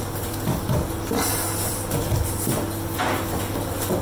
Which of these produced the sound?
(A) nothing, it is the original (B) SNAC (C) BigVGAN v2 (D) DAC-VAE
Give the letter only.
A